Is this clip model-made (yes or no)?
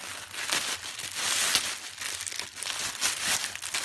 no